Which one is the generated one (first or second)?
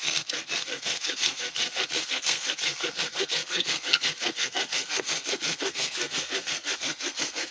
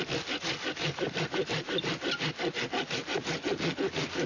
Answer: first